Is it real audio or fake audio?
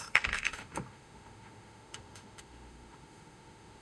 fake